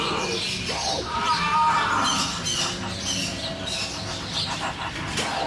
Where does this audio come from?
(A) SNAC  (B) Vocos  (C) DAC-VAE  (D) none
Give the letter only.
D